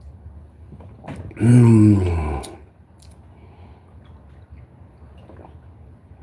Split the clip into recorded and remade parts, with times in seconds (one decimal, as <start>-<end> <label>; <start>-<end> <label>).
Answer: 0.0-6.2 recorded